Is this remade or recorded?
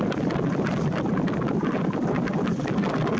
recorded